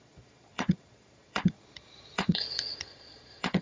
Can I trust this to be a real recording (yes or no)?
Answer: no